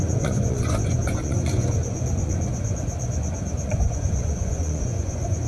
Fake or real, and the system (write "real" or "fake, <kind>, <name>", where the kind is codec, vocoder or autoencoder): fake, vocoder, Vocos